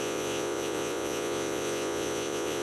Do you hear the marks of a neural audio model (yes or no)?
yes